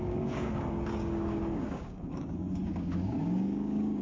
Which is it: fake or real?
fake